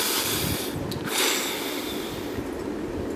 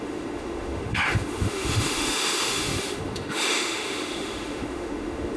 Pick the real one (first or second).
first